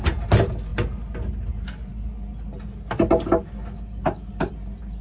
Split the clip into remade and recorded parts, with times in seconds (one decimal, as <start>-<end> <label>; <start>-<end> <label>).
0.0-5.0 recorded